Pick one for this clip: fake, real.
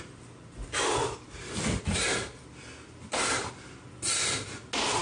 real